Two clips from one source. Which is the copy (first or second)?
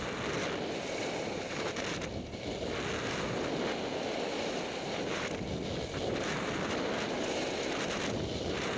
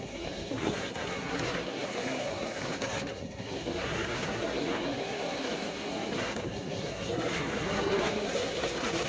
second